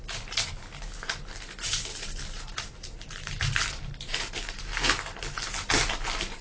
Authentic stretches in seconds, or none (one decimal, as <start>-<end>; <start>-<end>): 0.0-1.9; 3.4-6.4